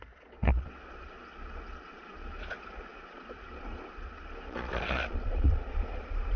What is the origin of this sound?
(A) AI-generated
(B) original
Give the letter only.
A